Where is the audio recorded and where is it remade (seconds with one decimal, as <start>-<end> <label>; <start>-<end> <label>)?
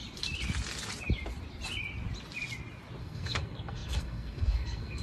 0.0-3.0 recorded; 3.0-5.0 remade